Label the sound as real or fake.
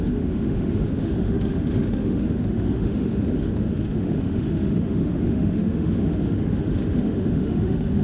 fake